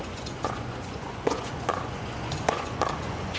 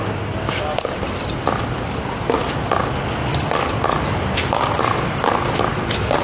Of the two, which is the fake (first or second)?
first